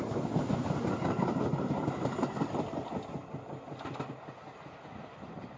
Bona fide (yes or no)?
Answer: yes